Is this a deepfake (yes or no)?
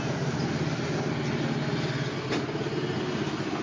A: no